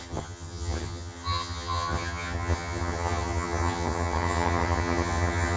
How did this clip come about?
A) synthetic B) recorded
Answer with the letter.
A